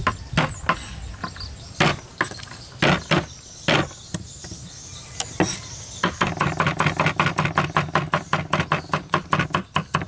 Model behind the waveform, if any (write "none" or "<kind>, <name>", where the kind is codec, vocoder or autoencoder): none